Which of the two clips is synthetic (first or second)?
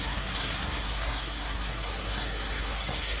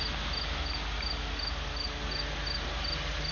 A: first